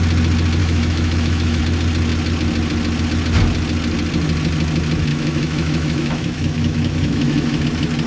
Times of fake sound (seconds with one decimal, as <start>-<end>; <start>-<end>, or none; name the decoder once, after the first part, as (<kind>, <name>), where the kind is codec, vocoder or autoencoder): 0.6-1.6 (autoencoder, DAC-VAE); 5.1-7.6